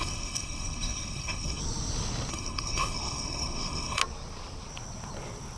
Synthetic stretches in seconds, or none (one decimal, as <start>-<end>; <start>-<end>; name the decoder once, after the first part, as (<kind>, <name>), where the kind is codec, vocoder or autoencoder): 0.0-1.6 (codec, HILCodec); 2.3-4.0